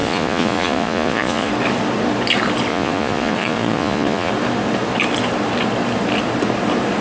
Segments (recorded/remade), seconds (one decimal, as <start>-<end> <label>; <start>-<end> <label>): 0.0-1.5 remade; 1.5-2.7 recorded; 2.7-4.3 remade; 4.3-7.0 recorded